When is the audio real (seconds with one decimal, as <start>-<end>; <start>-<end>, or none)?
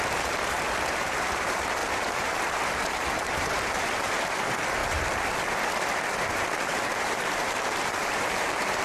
4.8-6.1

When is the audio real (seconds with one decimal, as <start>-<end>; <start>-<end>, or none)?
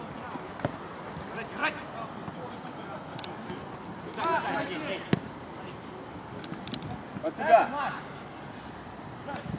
0.0-9.6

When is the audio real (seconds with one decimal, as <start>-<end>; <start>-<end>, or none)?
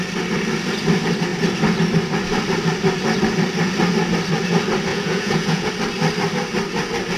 0.0-4.9; 5.7-7.2